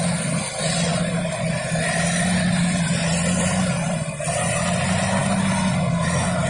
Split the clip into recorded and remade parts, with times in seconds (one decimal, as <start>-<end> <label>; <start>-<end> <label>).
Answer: 0.0-0.9 recorded; 0.9-4.4 remade; 4.4-6.5 recorded